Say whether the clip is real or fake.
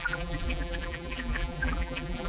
fake